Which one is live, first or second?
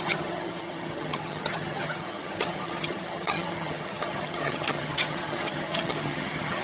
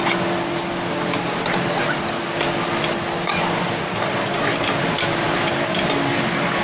second